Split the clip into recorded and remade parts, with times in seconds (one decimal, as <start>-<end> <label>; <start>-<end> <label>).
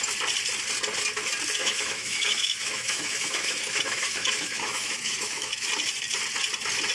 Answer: 0.0-1.6 recorded; 1.6-5.7 remade; 5.7-6.9 recorded